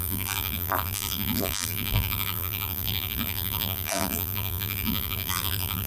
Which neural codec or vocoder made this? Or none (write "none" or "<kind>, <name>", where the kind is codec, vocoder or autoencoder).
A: vocoder, BigVGAN v2